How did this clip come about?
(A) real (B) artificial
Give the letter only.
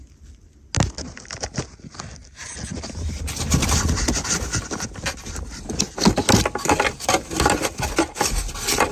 A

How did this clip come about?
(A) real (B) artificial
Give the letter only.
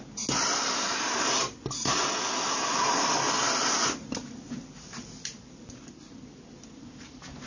A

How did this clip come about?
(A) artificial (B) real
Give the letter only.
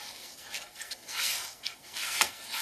A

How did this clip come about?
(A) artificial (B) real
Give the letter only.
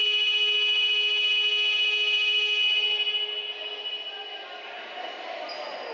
B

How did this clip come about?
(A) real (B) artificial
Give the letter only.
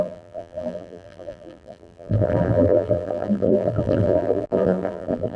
B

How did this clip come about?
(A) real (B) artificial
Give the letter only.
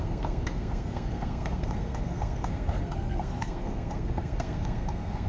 B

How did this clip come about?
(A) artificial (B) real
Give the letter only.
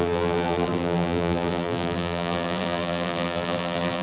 A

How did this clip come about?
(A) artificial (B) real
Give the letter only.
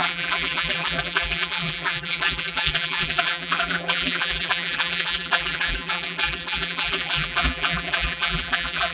A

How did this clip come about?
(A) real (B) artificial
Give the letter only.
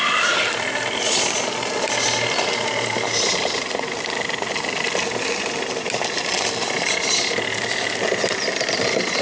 A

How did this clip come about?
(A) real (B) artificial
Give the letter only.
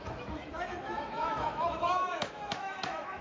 B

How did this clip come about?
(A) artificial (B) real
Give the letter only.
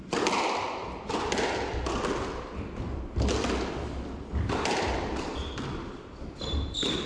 B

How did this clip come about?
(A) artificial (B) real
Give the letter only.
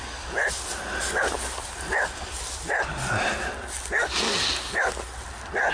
B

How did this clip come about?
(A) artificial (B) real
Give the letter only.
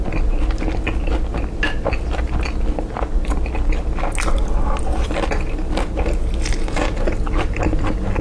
B